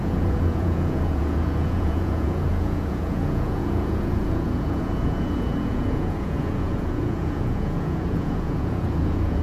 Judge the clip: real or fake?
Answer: fake